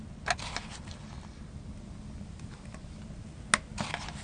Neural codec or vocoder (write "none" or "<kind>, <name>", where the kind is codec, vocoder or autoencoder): none